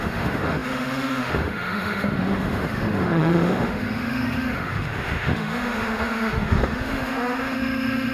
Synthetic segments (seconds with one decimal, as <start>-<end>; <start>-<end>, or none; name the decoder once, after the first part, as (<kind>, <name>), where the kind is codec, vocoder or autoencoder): 0.0-8.1 (autoencoder, DAC-VAE)